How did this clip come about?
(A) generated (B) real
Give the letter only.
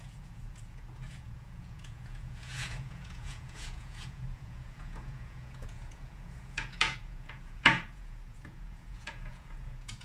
A